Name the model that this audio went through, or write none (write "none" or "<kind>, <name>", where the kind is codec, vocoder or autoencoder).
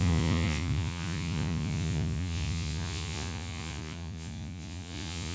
vocoder, Vocos